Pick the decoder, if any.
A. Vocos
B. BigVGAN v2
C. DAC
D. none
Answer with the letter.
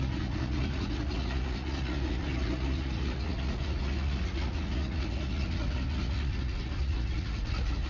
A